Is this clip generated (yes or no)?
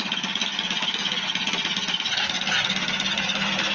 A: no